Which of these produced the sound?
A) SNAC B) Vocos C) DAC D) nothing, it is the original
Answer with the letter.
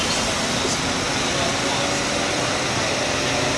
D